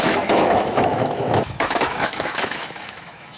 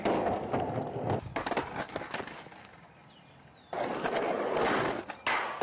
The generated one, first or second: first